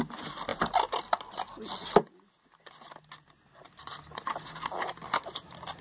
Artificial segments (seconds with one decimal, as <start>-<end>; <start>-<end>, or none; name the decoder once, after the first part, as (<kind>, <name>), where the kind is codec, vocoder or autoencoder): none